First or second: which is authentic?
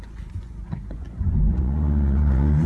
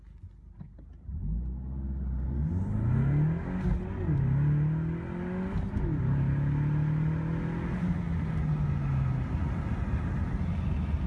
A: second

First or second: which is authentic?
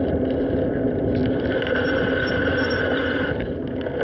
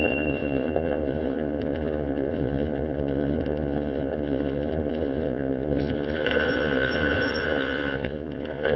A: first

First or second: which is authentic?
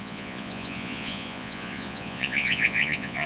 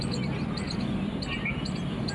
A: second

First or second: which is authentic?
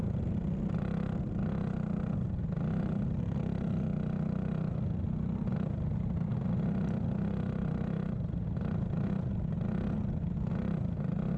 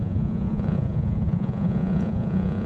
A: first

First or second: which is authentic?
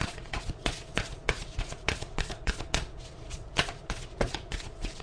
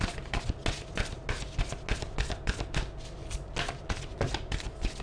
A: second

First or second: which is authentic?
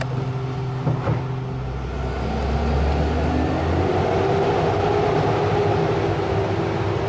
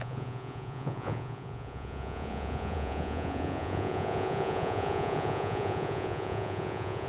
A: first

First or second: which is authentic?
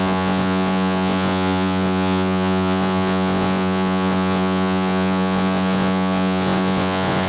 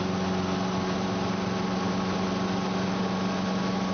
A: second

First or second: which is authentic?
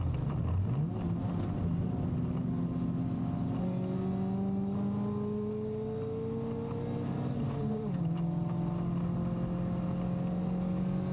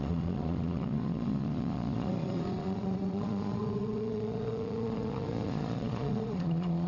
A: first